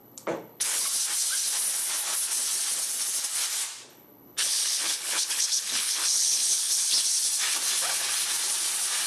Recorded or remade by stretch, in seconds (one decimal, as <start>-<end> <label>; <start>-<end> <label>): 0.0-0.8 remade; 0.8-3.9 recorded; 3.9-6.9 remade; 6.9-9.1 recorded

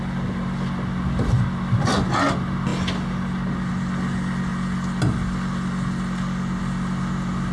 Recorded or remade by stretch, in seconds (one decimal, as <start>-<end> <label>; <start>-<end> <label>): 0.0-7.5 recorded

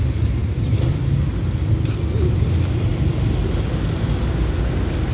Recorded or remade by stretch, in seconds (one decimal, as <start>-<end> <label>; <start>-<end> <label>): 0.0-5.1 recorded

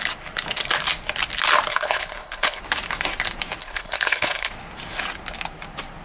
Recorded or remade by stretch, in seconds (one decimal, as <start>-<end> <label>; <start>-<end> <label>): 0.0-1.7 recorded; 1.7-2.6 remade; 2.6-3.6 recorded; 3.6-4.5 remade; 4.5-6.0 recorded